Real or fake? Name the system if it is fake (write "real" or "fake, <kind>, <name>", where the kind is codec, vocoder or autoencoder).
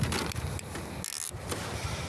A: real